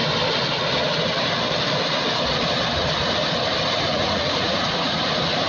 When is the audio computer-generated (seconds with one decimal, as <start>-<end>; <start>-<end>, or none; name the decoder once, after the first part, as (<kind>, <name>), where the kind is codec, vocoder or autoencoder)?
3.9-5.0 (vocoder, Vocos)